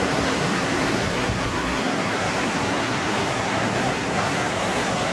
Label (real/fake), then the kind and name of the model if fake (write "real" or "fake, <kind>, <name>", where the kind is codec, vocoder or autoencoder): fake, codec, SNAC